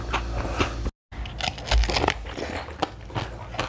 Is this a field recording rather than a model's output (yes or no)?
yes